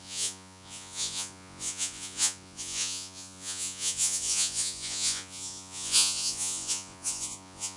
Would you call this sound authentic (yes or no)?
no